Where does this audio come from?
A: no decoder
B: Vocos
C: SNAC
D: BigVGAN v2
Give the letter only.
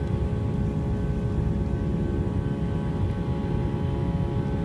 A